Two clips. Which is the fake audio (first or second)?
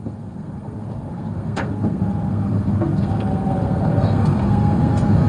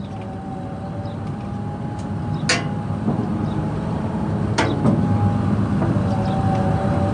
first